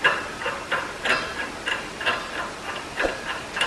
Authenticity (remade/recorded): recorded